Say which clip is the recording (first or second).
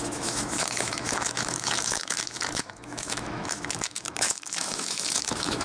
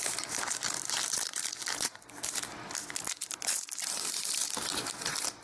second